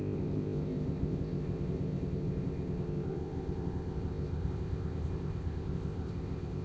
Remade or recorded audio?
remade